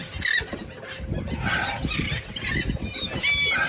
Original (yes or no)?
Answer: yes